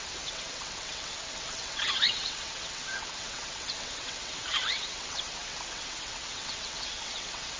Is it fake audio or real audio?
fake